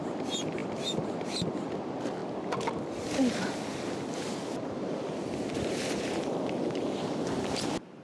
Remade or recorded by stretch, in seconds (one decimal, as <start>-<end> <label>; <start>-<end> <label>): 0.0-8.0 recorded

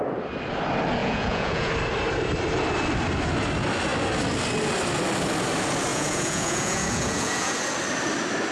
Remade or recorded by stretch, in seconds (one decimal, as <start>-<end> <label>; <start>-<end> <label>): 0.0-1.0 recorded; 1.0-1.7 remade; 1.7-5.9 recorded; 5.9-7.6 remade; 7.6-8.5 recorded

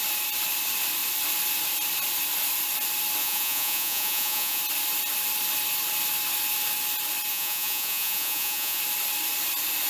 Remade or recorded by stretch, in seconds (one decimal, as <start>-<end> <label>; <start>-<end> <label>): 0.0-3.2 recorded; 3.2-4.6 remade; 4.6-7.3 recorded; 7.3-8.8 remade; 8.8-9.9 recorded

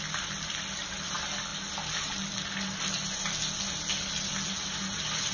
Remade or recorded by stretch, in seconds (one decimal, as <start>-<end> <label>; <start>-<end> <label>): 0.0-5.3 recorded

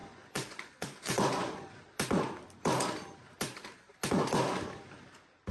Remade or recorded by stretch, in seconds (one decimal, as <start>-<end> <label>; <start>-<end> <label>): 0.0-1.8 remade; 1.8-5.5 recorded

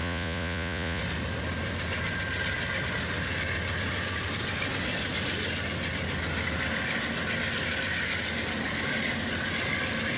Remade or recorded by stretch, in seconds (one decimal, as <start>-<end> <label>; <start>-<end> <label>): 0.0-1.0 remade; 1.0-10.2 recorded